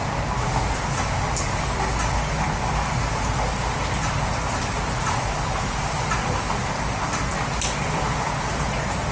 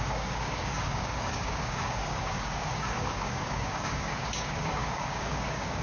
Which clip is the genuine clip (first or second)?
first